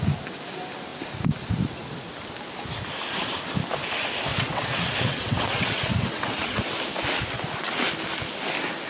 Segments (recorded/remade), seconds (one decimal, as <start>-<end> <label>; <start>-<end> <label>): 0.0-4.3 recorded; 4.3-6.7 remade; 6.7-8.9 recorded